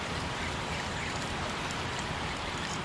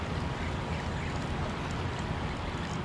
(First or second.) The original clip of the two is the second